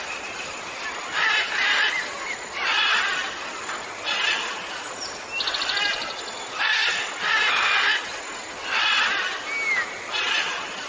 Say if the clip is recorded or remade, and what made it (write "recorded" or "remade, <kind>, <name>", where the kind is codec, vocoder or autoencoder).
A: recorded